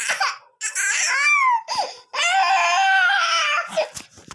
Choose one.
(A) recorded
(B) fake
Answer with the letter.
A